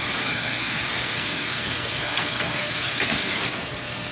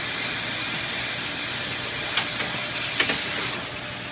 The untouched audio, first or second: second